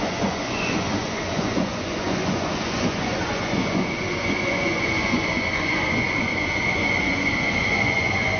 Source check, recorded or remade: remade